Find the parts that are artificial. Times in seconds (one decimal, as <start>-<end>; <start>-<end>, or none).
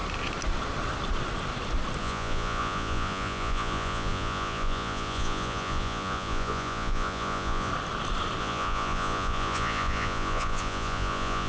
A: 2.0-7.7; 8.4-11.5